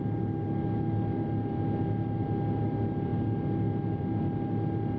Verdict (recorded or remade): recorded